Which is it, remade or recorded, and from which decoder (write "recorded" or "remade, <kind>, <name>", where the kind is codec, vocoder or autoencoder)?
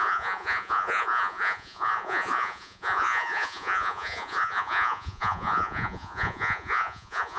remade, vocoder, Vocos